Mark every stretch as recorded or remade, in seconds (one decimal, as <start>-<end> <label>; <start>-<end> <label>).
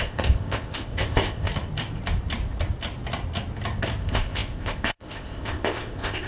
0.0-1.5 remade; 1.5-4.0 recorded; 4.0-6.3 remade